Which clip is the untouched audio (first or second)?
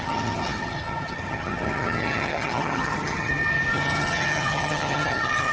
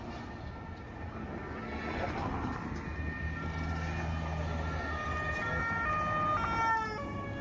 second